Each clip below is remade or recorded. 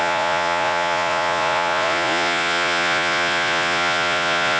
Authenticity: remade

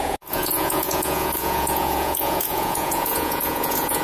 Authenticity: remade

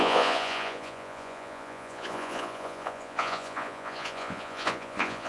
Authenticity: remade